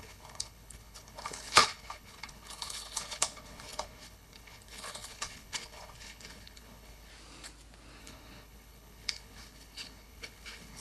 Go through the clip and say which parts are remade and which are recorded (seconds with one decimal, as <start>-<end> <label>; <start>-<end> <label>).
0.0-7.1 remade; 7.1-8.0 recorded; 8.0-10.8 remade